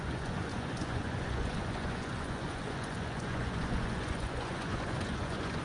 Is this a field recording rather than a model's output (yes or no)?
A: no